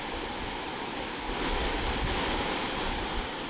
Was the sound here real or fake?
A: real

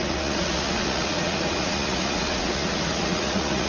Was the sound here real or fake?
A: fake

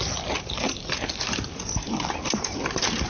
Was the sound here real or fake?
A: real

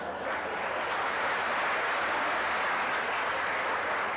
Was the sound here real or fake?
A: real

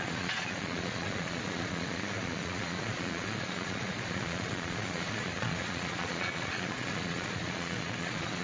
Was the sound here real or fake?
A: fake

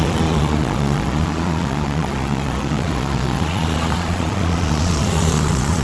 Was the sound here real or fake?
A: fake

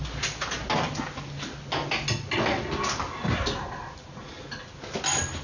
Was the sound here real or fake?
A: real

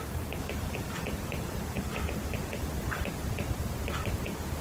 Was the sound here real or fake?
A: real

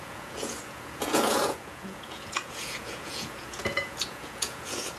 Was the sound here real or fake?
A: fake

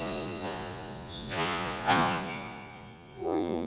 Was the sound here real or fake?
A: fake